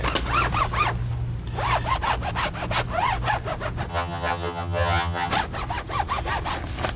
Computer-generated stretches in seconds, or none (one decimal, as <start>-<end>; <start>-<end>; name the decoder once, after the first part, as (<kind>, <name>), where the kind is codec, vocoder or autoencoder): 3.9-5.3 (vocoder, HiFi-GAN)